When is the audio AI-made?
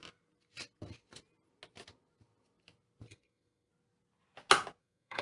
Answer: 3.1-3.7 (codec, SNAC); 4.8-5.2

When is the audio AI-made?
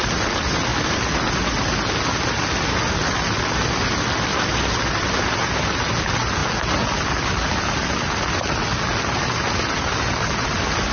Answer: none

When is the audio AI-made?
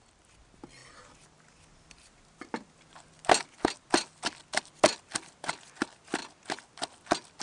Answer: none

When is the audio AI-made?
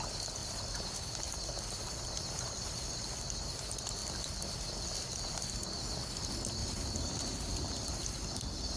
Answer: 0.4-3.4 (vocoder, BigVGAN v2); 6.6-7.9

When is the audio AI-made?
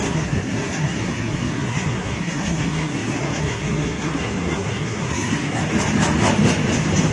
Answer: 0.0-5.6 (codec, SNAC)